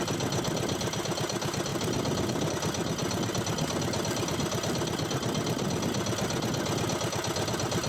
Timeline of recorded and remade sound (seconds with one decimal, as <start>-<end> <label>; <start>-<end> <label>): 0.0-1.7 recorded; 1.7-2.5 remade; 2.5-7.9 recorded